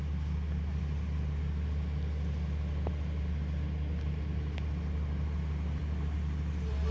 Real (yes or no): yes